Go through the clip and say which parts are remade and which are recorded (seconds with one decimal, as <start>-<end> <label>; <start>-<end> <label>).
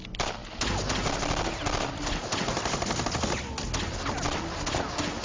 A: 0.0-5.2 recorded